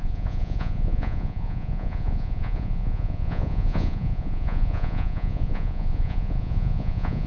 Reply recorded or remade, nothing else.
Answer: remade